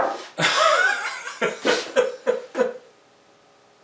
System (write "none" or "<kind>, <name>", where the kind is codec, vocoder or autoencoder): none